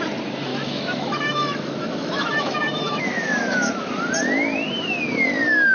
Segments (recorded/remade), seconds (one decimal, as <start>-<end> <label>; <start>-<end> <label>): 0.0-0.5 recorded; 0.5-3.9 remade; 3.9-5.7 recorded